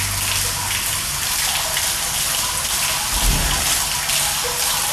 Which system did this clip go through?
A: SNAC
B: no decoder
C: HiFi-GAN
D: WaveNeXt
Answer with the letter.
B